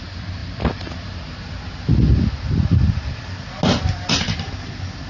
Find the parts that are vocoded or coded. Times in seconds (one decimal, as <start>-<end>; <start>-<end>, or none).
none